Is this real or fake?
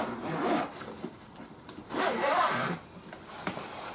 fake